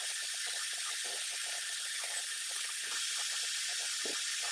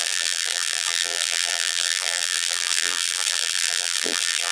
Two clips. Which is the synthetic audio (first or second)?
second